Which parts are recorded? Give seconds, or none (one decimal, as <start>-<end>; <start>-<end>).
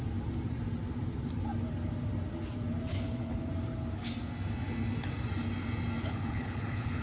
0.0-2.9; 3.5-6.0